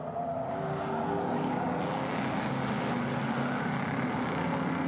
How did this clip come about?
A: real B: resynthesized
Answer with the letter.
A